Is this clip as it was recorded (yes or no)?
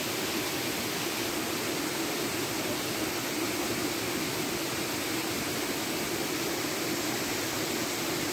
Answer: yes